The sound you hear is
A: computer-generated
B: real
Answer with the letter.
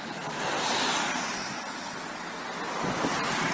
B